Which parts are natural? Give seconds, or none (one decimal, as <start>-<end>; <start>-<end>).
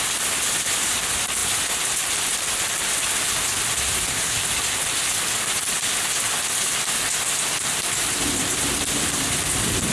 0.0-9.9